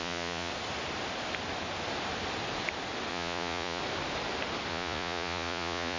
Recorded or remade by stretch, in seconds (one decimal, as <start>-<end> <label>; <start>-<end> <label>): 0.0-0.5 remade; 0.5-3.1 recorded; 3.1-3.8 remade; 3.8-4.7 recorded; 4.7-6.0 remade